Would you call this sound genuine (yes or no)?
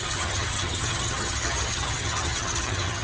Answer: no